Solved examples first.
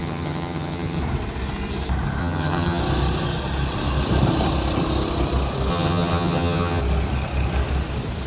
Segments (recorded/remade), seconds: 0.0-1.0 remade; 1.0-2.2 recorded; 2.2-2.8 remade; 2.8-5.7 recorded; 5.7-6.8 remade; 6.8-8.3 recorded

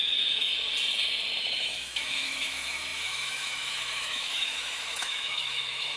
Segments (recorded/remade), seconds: 0.0-0.5 remade; 0.5-1.4 recorded; 1.4-6.0 remade

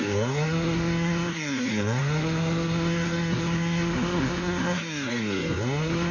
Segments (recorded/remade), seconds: 0.0-6.1 remade

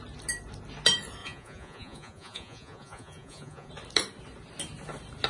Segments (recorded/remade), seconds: 0.0-1.2 recorded; 1.2-3.7 remade; 3.7-5.3 recorded

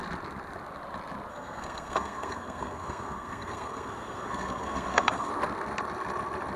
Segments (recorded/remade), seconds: 0.0-1.3 recorded; 1.3-5.3 remade; 5.3-6.6 recorded

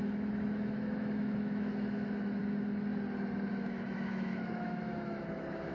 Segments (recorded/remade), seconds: 0.0-2.4 remade; 2.4-3.5 recorded; 3.5-5.7 remade

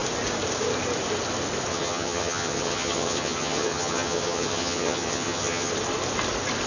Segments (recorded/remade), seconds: 0.0-1.7 recorded; 1.7-5.7 remade; 5.7-6.7 recorded